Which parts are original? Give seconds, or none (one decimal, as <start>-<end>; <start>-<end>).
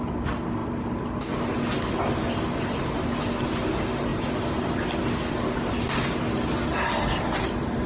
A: 0.0-7.9